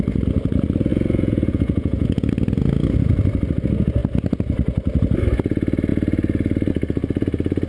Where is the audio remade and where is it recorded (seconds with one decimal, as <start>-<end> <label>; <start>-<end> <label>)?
0.0-0.9 recorded; 0.9-2.3 remade; 2.3-7.7 recorded